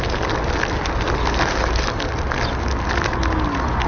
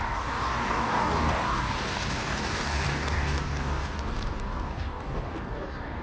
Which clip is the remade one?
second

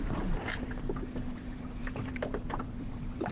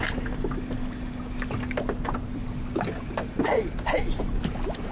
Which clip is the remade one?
first